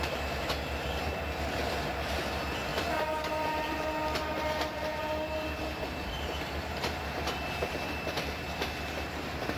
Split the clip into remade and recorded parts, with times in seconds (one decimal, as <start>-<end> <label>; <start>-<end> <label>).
0.0-9.6 remade